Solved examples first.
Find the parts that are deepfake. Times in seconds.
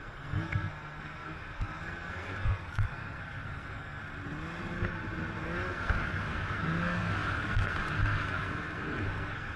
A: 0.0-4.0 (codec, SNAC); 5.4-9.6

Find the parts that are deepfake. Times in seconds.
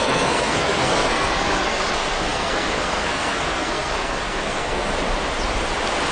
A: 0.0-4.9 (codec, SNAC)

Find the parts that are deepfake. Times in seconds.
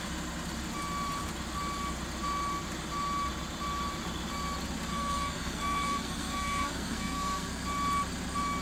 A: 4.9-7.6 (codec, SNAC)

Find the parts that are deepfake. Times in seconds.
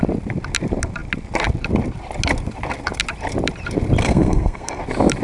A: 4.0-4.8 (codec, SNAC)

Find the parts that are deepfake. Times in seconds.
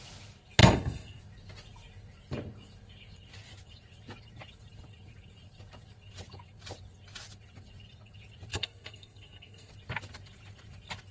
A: 0.6-1.2 (codec, SNAC); 8.5-9.7